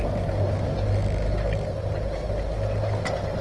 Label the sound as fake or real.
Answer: real